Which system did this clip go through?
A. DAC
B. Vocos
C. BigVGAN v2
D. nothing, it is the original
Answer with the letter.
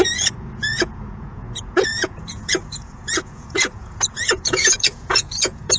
B